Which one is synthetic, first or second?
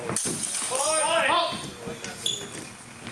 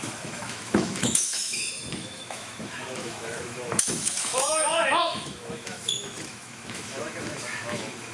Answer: second